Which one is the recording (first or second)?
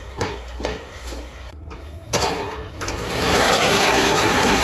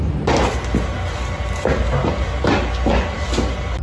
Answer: second